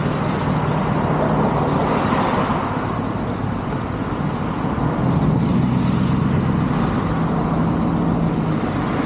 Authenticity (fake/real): real